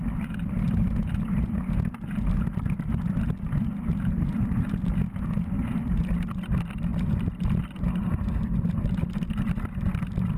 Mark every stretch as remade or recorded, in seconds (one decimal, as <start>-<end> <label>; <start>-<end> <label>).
0.0-10.4 recorded